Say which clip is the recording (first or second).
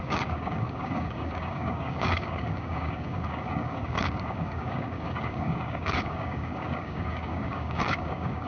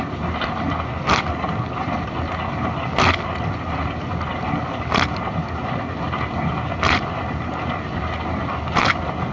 second